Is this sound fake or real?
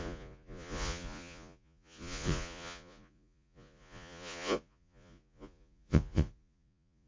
fake